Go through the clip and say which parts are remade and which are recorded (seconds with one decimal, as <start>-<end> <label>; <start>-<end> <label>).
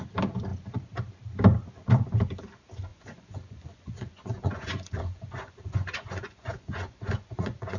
0.0-2.9 recorded; 2.9-7.8 remade